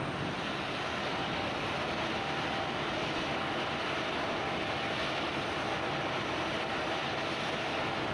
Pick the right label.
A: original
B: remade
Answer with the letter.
A